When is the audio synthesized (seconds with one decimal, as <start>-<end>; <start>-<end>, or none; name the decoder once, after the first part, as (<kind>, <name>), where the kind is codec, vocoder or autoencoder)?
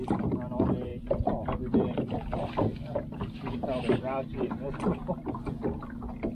none